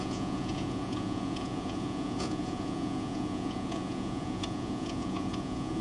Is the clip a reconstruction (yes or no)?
yes